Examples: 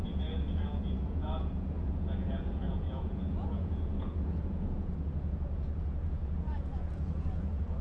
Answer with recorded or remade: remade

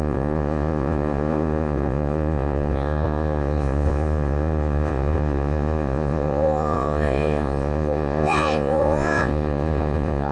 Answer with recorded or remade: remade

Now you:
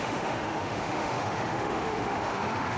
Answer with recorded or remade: remade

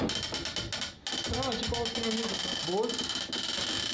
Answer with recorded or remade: recorded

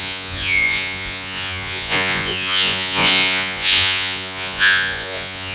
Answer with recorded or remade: remade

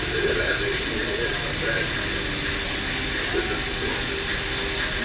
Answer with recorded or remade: recorded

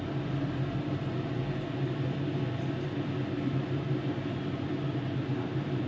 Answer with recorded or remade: recorded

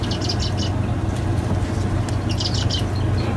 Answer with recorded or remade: recorded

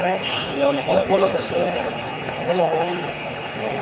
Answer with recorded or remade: remade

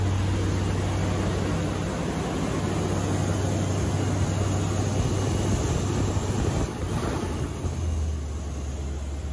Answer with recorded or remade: recorded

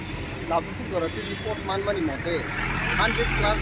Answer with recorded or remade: recorded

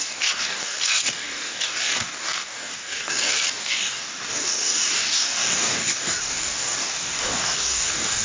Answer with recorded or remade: remade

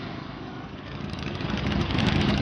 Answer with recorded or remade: remade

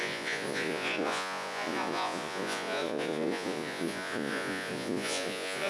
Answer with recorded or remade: remade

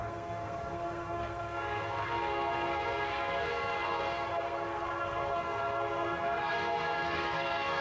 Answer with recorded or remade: remade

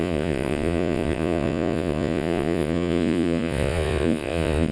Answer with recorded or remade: remade